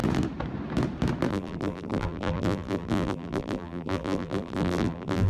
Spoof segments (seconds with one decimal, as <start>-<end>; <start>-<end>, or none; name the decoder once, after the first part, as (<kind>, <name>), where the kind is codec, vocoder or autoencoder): 1.3-5.3 (vocoder, BigVGAN v2)